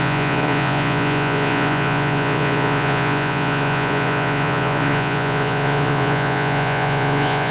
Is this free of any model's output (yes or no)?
no